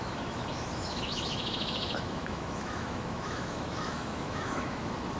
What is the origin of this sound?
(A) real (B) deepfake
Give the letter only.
B